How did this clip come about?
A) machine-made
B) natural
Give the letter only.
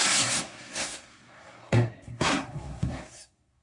A